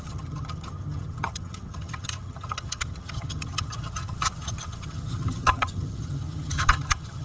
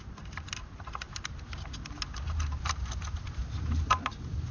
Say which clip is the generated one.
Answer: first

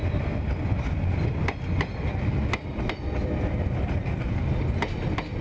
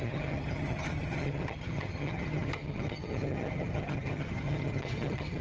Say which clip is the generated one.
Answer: second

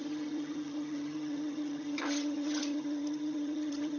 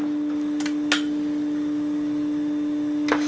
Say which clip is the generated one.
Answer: first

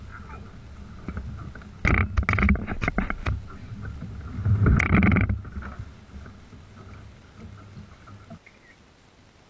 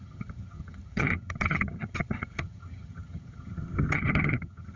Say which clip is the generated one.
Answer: second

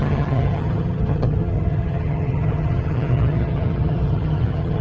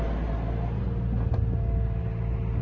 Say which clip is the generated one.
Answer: first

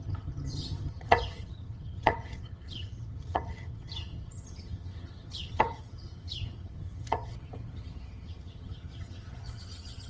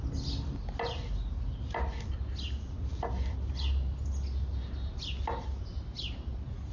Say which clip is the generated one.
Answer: first